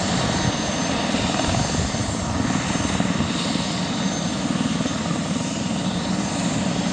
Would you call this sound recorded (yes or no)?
yes